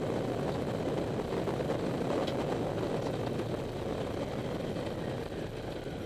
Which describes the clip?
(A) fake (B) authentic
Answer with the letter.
B